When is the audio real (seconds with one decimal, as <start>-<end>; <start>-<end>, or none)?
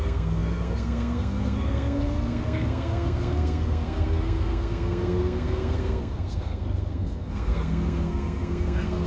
none